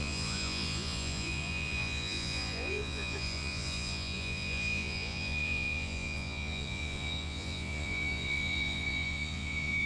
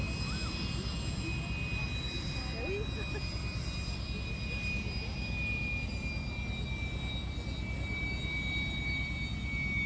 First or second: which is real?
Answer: second